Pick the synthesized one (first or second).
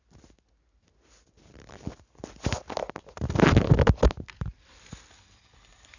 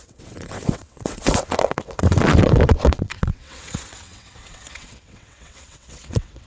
second